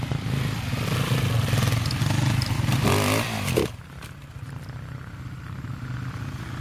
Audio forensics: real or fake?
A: real